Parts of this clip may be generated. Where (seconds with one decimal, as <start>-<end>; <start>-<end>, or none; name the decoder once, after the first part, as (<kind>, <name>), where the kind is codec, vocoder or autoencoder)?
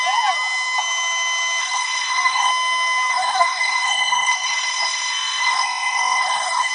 1.6-2.5 (codec, SNAC); 3.1-6.7